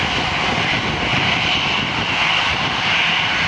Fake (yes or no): no